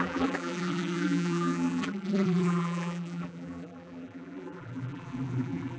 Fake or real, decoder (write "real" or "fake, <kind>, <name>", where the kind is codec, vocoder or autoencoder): fake, vocoder, BigVGAN v2